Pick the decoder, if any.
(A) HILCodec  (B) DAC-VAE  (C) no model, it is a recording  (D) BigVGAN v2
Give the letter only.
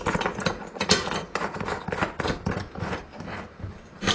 C